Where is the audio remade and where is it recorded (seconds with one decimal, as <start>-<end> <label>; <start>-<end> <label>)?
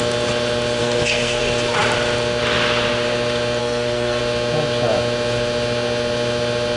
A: 0.0-0.8 recorded; 0.8-1.4 remade; 1.4-3.6 recorded; 3.6-4.2 remade; 4.2-6.8 recorded